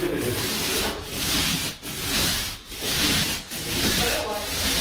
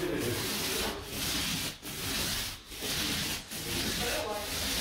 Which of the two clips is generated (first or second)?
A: first